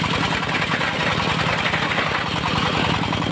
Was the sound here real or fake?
real